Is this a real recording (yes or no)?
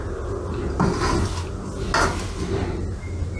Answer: yes